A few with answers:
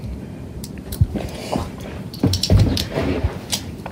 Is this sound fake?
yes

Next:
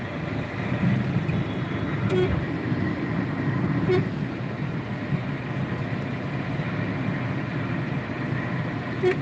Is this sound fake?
no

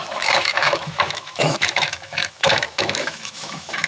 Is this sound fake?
yes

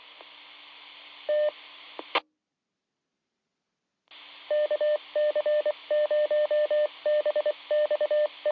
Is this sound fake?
no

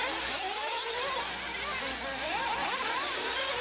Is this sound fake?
no